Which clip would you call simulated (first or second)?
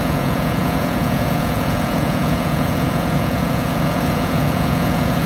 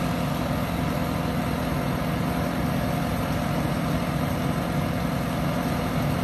first